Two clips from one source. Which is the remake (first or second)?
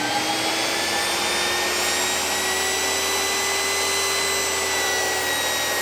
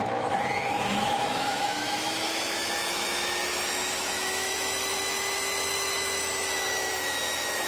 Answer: second